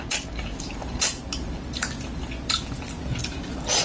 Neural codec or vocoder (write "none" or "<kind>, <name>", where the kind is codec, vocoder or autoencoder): none